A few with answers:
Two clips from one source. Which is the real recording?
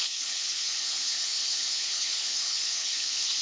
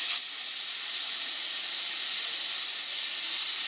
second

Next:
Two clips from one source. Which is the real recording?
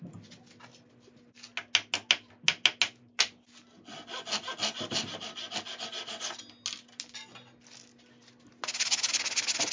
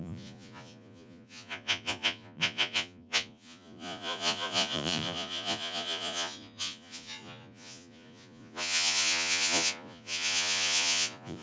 first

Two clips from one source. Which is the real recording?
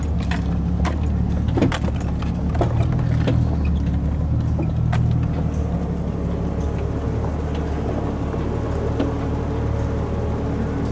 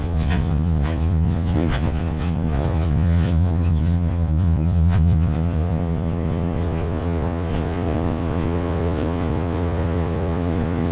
first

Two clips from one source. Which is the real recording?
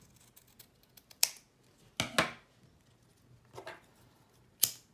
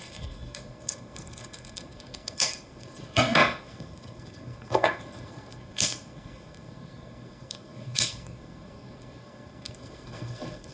first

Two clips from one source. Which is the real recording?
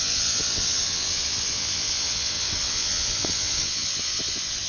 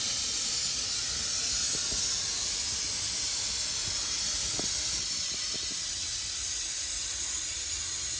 second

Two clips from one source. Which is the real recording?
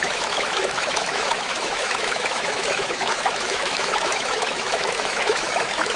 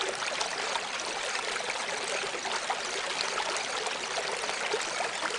second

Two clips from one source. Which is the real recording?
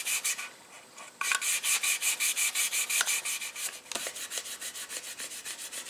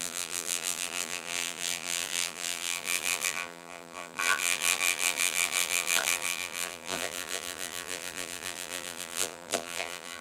first